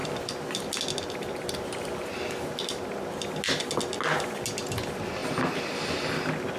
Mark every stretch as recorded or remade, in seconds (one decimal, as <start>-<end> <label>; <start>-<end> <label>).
0.0-6.6 recorded